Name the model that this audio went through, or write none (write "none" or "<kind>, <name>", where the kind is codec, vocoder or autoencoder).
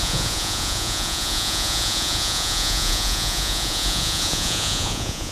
vocoder, Vocos